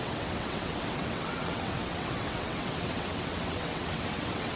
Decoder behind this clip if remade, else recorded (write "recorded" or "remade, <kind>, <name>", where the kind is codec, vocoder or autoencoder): remade, vocoder, WaveNeXt